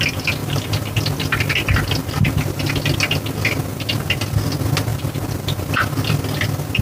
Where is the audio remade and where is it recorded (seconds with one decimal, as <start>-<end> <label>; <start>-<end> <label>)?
0.0-0.4 recorded; 0.4-1.0 remade; 1.0-2.0 recorded; 2.0-2.7 remade; 2.7-4.9 recorded; 4.9-5.6 remade; 5.6-6.8 recorded